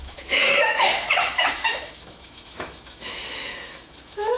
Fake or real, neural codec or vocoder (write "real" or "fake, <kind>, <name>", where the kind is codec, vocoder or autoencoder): fake, autoencoder, DAC-VAE